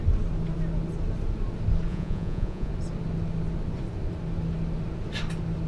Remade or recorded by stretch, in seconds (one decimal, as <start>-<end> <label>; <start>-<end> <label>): 0.0-1.9 recorded; 1.9-2.7 remade; 2.7-5.7 recorded